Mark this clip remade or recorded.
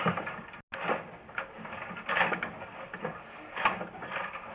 recorded